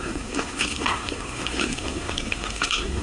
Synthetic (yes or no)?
yes